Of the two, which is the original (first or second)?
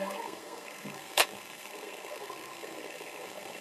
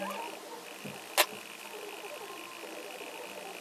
second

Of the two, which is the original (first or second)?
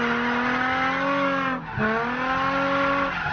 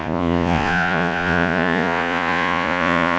first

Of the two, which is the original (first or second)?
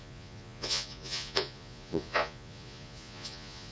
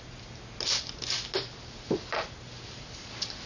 second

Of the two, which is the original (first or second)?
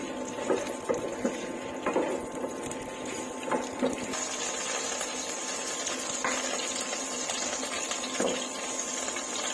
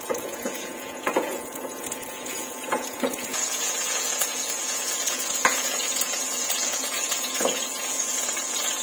first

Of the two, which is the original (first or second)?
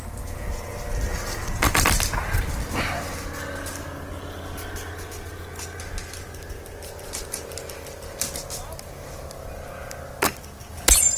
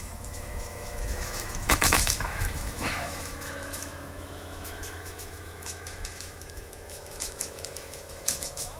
first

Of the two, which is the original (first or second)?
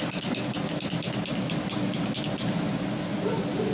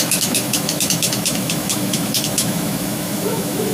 first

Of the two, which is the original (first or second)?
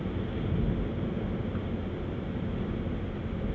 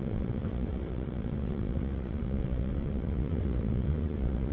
first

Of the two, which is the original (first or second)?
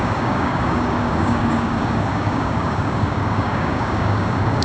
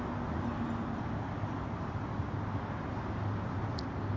second